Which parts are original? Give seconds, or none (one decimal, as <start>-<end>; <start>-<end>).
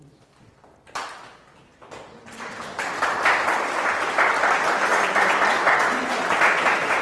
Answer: none